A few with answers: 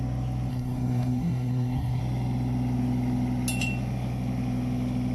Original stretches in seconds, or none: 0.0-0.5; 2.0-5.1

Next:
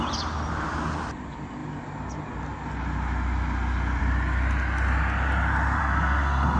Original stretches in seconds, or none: 0.0-5.8

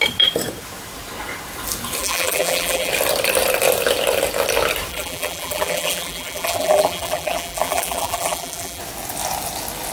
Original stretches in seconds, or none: 0.0-2.0; 2.9-4.9; 8.8-9.9

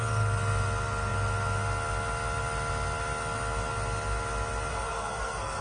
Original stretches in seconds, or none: 0.0-4.7